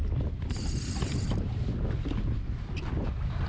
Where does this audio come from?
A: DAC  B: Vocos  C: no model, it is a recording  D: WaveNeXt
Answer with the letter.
C